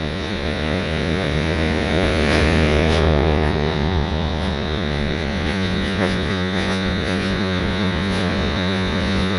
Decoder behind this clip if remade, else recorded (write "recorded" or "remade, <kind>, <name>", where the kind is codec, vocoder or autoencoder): remade, vocoder, Vocos